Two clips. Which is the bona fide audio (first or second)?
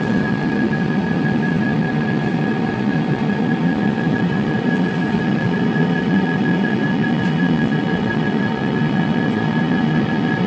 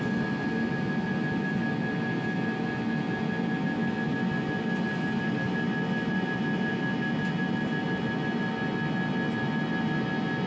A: second